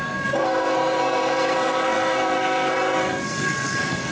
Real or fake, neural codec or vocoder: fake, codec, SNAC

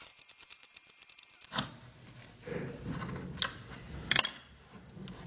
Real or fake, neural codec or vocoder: real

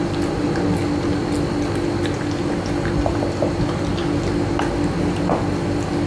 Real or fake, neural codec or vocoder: real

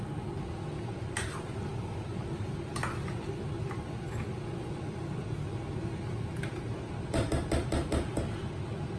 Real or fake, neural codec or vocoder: real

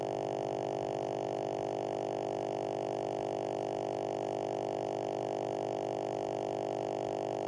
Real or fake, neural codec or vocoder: real